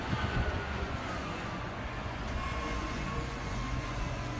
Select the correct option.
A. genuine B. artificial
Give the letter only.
B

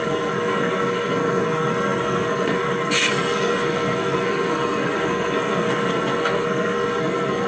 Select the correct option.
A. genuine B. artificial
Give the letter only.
B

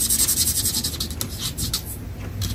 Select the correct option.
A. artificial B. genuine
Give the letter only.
B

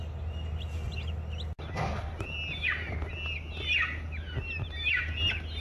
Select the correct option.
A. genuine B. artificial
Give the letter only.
A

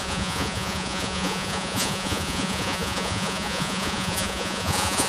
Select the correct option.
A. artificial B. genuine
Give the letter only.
A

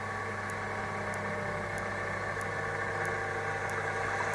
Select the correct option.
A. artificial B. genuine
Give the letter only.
B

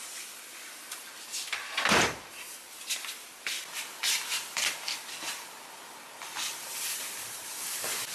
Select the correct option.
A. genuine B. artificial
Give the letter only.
B